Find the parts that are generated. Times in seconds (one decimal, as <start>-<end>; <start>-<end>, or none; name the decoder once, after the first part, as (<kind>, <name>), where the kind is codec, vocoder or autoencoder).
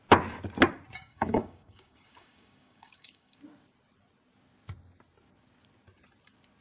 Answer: 1.1-3.4 (codec, DAC)